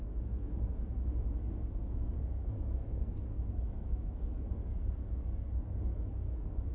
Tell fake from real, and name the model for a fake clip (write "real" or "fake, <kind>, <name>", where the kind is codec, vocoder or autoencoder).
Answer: fake, codec, SNAC